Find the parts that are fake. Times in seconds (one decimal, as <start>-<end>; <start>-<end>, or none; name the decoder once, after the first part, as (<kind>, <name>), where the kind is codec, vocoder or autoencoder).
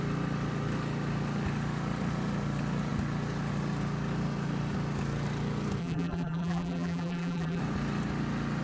5.8-7.6 (vocoder, BigVGAN v2)